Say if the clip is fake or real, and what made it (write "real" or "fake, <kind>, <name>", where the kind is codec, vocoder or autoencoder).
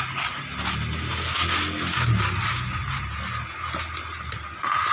real